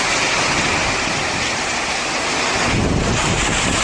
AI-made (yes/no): no